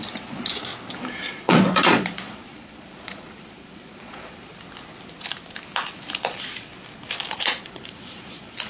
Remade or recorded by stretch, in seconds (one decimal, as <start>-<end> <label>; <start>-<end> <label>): 0.0-0.7 remade; 0.7-1.2 recorded; 1.2-4.5 remade; 4.5-7.3 recorded; 7.3-8.7 remade